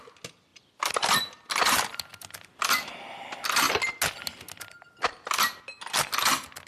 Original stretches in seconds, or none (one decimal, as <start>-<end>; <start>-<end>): 0.0-6.7